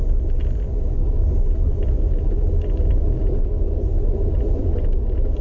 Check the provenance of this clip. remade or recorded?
recorded